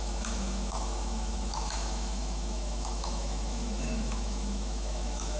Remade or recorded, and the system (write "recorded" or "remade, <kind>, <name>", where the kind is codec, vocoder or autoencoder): remade, autoencoder, DAC-VAE